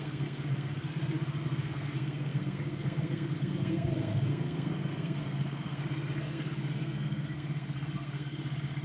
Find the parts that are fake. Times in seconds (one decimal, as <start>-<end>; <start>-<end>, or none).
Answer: 0.0-8.8